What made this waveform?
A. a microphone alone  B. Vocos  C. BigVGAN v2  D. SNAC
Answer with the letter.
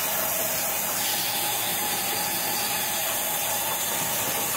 A